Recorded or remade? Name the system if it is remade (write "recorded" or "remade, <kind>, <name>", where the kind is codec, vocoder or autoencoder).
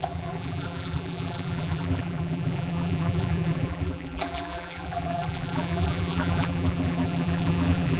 remade, vocoder, BigVGAN v2